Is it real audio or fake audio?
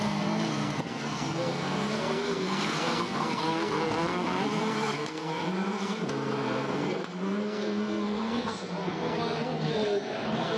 fake